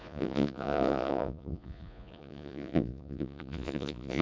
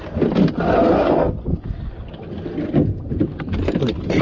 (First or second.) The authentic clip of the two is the second